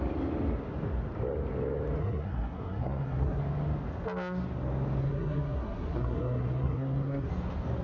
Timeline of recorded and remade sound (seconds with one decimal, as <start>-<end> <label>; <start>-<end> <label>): 0.0-2.0 recorded; 2.0-3.4 remade; 3.4-5.0 recorded; 5.0-7.3 remade; 7.3-7.8 recorded